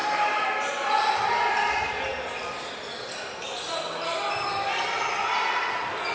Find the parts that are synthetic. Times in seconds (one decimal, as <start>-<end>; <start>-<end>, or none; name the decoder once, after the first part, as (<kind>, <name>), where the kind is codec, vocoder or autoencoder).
none